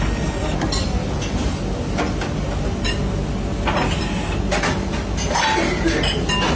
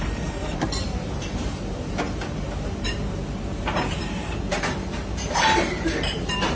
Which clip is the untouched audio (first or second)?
first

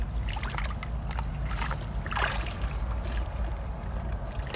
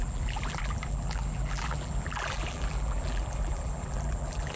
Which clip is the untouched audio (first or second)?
first